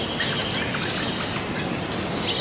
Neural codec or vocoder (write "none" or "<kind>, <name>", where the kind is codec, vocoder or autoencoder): none